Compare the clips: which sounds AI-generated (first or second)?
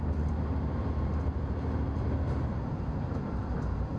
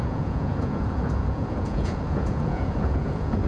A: second